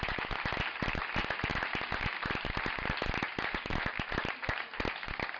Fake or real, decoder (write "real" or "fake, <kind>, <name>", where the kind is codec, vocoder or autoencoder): real